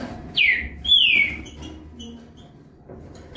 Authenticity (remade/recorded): recorded